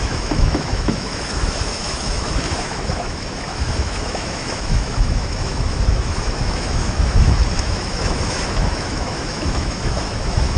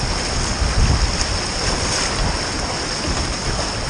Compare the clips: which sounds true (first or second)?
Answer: second